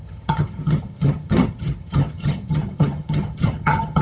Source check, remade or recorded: remade